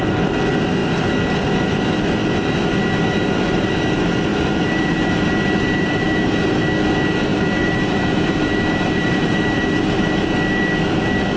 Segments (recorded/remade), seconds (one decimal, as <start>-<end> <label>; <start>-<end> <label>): 0.0-4.3 recorded; 4.3-6.3 remade; 6.3-7.3 recorded; 7.3-10.0 remade; 10.0-11.4 recorded